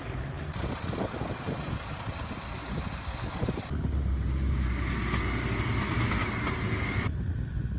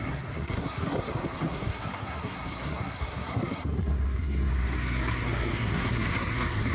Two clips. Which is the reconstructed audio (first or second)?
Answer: second